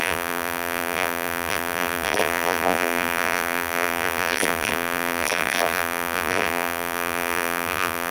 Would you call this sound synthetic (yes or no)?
yes